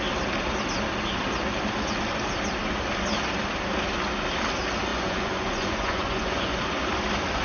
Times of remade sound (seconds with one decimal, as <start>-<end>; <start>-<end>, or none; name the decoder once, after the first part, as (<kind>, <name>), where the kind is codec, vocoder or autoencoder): 4.9-6.6 (vocoder, Vocos)